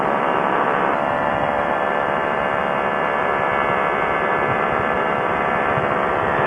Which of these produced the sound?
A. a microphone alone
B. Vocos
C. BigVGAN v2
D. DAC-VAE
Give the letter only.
A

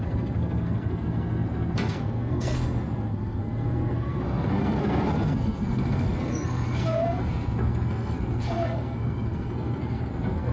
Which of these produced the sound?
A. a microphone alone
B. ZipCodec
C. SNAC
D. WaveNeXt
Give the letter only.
C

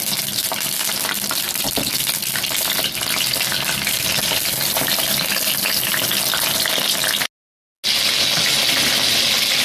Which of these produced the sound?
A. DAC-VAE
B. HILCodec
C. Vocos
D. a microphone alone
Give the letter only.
D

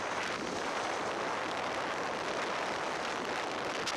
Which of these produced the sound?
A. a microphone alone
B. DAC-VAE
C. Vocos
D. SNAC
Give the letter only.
A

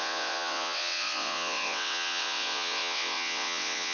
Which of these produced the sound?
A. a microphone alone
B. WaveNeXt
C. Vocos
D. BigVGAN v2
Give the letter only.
B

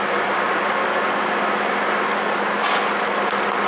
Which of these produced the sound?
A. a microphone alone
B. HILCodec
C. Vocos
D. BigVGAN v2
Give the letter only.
A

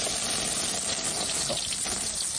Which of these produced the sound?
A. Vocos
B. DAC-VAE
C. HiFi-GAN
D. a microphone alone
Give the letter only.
D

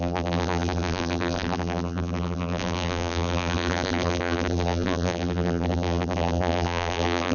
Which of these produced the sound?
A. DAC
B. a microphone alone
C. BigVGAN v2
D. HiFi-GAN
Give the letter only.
C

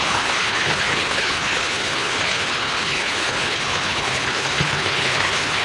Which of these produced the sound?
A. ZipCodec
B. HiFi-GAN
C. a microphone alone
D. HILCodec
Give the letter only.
D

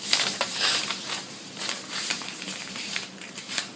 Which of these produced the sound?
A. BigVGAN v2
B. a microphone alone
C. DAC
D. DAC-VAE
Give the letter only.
A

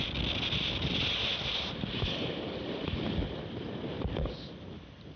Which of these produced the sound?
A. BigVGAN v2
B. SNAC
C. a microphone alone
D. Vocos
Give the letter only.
A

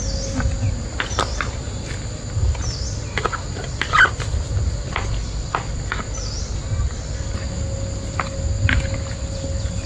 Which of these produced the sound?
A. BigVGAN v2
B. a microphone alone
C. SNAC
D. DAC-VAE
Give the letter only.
B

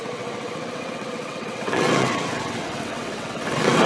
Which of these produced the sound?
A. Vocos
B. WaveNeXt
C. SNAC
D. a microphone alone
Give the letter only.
B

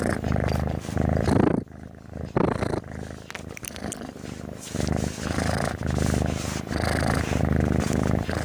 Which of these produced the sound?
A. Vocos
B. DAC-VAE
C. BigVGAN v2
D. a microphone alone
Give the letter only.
D